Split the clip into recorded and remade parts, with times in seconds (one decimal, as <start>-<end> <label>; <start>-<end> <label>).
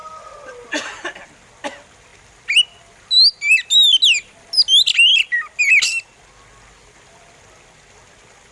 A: 0.0-8.5 recorded